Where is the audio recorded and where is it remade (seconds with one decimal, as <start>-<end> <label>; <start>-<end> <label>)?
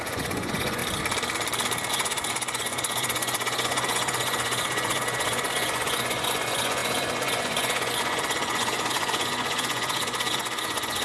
0.0-0.8 remade; 0.8-1.9 recorded; 1.9-11.0 remade